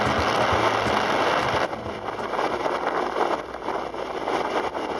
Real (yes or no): yes